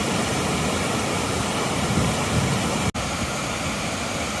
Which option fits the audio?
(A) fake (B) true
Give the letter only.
B